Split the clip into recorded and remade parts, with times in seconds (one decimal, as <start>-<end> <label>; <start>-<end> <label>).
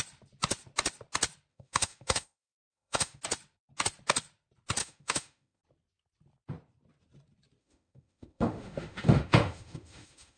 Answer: 0.0-1.5 recorded; 1.5-3.2 remade; 3.2-4.8 recorded; 4.8-5.6 remade; 5.6-7.6 recorded; 7.6-10.4 remade